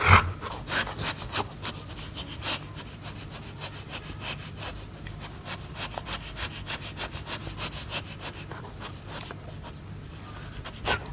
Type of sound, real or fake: real